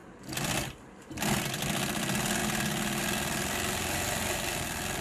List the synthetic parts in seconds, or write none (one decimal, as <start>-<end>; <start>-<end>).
none